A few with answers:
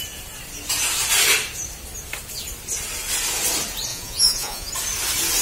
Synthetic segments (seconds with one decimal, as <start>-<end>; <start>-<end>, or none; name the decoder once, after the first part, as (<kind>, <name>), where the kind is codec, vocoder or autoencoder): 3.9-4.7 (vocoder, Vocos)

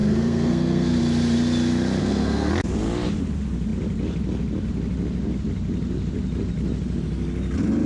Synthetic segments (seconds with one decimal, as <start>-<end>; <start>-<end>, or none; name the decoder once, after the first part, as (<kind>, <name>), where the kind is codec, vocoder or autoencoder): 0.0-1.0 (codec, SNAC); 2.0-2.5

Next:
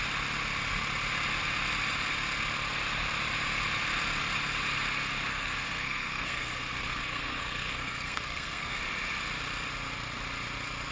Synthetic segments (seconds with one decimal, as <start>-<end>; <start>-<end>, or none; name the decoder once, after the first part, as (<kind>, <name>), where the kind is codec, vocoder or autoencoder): 5.3-8.8 (codec, SNAC)

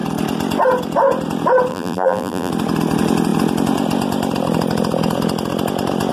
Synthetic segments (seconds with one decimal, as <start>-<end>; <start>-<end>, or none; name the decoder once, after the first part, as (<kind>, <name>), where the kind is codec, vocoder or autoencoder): 1.7-2.5 (vocoder, BigVGAN v2)

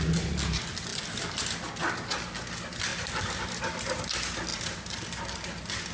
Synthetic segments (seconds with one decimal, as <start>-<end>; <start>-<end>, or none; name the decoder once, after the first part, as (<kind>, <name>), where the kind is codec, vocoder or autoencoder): 0.9-1.7 (vocoder, BigVGAN v2); 2.9-3.5; 4.5-5.9